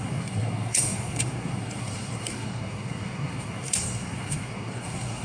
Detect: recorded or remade remade